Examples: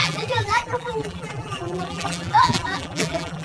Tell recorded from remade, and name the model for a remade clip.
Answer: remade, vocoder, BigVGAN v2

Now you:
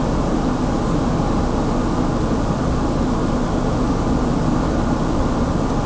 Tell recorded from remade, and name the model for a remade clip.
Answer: remade, vocoder, BigVGAN v2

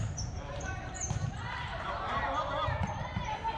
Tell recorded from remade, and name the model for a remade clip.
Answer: remade, vocoder, BigVGAN v2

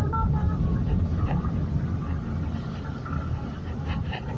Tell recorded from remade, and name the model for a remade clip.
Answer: recorded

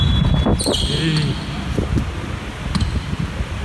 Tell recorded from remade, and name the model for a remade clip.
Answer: recorded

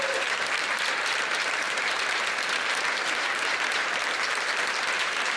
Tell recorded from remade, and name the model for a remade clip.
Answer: remade, vocoder, BigVGAN v2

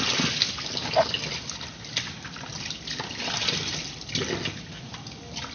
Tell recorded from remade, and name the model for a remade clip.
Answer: recorded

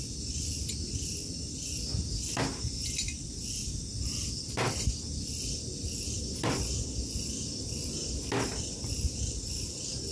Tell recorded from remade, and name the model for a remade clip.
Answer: recorded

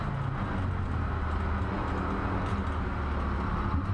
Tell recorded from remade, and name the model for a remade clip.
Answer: recorded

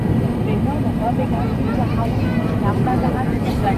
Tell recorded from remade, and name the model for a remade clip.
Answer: remade, vocoder, BigVGAN v2